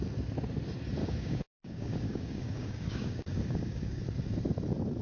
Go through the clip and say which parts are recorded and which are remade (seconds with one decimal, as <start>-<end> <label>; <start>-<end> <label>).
0.0-1.0 recorded; 1.0-4.0 remade; 4.0-5.0 recorded